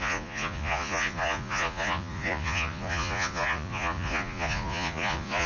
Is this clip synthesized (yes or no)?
yes